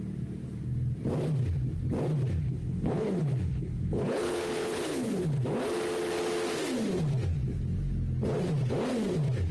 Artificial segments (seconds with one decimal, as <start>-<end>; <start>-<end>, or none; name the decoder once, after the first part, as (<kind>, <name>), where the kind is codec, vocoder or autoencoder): 2.4-5.1 (codec, HILCodec)